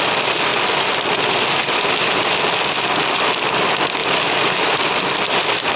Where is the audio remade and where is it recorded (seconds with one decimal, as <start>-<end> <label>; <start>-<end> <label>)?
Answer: 0.0-5.8 recorded